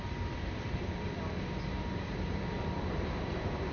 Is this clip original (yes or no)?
no